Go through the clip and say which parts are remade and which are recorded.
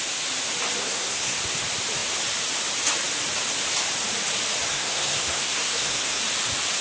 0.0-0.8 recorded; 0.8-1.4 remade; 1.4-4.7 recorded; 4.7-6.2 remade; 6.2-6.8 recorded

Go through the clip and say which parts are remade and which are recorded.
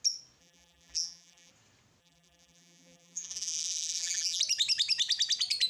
0.0-0.4 recorded; 0.4-1.5 remade; 1.5-2.0 recorded; 2.0-4.4 remade; 4.4-5.7 recorded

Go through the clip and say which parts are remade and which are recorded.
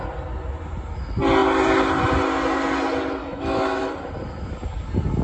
0.0-3.2 recorded; 3.2-3.9 remade; 3.9-5.2 recorded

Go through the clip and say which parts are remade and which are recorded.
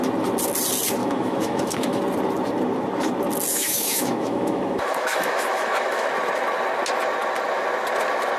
0.0-1.0 recorded; 1.0-2.0 remade; 2.0-3.5 recorded; 3.5-6.1 remade; 6.1-8.4 recorded